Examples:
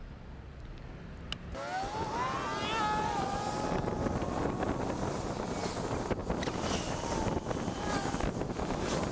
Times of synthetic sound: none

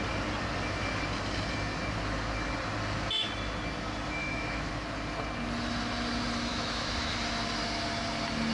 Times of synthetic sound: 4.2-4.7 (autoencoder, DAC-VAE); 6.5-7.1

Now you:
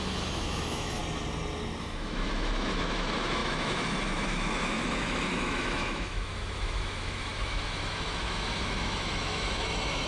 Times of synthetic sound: 0.0-1.0 (autoencoder, DAC-VAE); 1.8-10.1

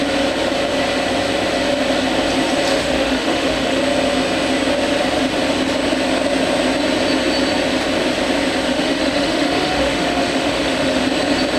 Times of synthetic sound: 2.7-3.8 (autoencoder, DAC-VAE); 8.7-11.0